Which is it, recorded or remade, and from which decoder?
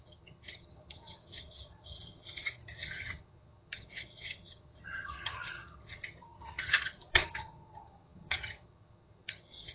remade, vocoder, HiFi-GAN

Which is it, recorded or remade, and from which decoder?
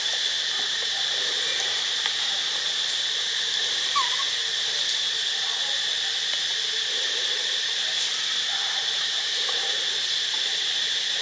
remade, vocoder, BigVGAN v2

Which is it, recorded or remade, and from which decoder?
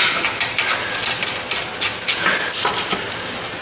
recorded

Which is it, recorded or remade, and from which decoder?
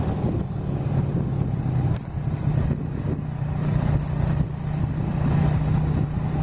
recorded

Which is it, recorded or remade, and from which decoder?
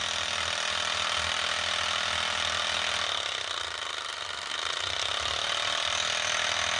recorded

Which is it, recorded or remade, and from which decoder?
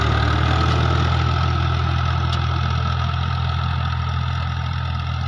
recorded